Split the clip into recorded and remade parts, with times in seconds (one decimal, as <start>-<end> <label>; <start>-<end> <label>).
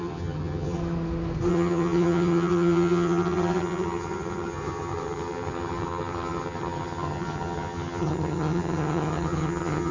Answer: 0.0-0.8 remade; 0.8-1.5 recorded; 1.5-9.9 remade